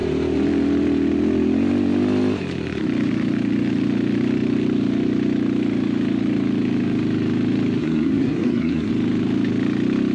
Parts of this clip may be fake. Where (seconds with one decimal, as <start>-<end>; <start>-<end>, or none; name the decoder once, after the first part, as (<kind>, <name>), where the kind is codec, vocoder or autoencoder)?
7.8-8.9 (codec, SNAC)